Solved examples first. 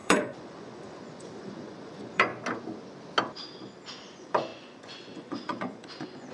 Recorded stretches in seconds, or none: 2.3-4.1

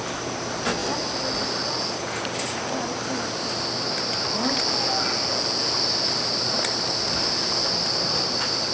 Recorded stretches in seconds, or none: 0.0-8.7

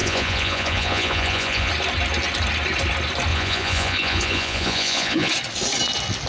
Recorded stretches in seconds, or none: 1.7-3.3; 5.3-6.3

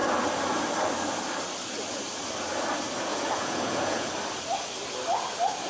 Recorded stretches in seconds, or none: 0.0-3.1; 4.1-5.7

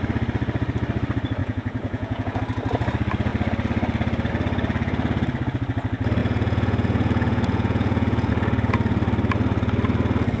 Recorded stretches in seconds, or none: 0.0-1.4; 2.4-6.2; 8.3-10.4